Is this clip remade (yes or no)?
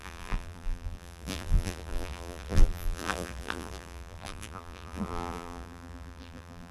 yes